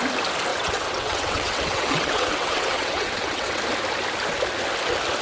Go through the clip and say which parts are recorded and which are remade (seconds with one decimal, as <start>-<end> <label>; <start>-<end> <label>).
0.0-0.5 recorded; 0.5-3.6 remade; 3.6-5.2 recorded